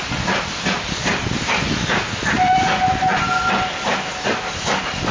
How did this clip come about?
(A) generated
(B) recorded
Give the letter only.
B